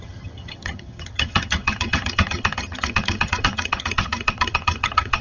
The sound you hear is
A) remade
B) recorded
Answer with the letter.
A